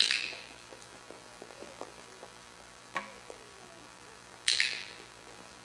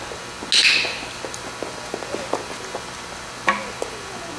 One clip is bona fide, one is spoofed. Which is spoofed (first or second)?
first